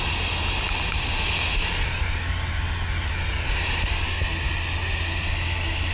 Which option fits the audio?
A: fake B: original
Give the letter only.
B